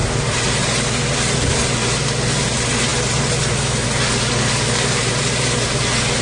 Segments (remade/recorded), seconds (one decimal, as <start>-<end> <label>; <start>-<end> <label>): 0.0-6.2 recorded